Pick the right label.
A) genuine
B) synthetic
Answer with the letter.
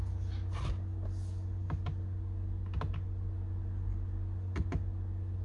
A